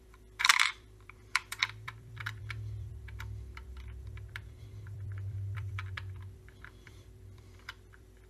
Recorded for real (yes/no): no